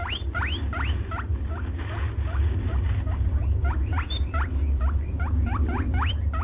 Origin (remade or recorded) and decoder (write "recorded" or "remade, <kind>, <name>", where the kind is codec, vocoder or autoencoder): recorded